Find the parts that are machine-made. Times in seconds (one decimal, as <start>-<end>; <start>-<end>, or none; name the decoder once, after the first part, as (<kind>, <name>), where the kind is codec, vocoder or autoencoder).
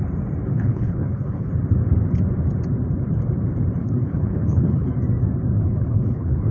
0.5-1.5 (codec, HILCodec); 3.8-4.9; 5.6-6.5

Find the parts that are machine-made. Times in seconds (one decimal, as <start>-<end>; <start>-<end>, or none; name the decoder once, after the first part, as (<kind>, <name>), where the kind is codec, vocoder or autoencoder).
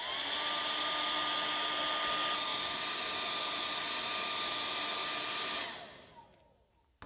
none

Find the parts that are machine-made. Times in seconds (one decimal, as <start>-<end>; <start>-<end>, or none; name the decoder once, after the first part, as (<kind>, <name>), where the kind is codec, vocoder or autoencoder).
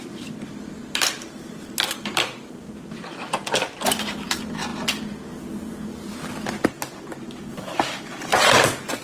0.0-7.7 (vocoder, BigVGAN v2)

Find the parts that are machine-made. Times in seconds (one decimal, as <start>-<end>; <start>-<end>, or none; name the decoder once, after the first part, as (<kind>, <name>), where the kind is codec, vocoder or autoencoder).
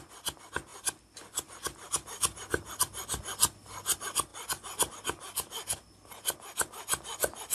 none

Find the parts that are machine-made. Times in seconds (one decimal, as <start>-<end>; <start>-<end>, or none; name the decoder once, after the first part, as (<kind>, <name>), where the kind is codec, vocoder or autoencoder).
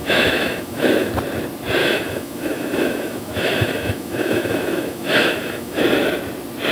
0.0-1.1 (autoencoder, DAC-VAE); 1.8-5.8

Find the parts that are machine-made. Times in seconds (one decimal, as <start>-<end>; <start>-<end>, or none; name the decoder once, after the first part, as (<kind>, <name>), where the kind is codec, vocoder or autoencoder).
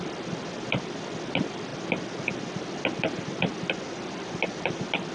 none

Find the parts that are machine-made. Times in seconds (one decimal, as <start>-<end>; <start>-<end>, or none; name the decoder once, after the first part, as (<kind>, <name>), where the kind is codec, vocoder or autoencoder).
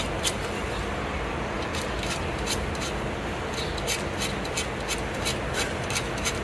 none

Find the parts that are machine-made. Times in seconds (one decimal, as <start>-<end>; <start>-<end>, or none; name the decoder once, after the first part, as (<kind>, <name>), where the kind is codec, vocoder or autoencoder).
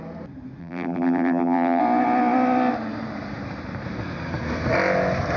0.6-1.8 (vocoder, BigVGAN v2)